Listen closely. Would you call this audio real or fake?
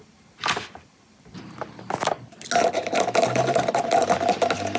real